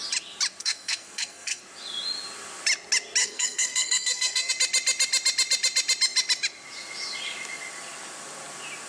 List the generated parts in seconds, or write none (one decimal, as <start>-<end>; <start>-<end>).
0.6-1.6; 3.2-4.5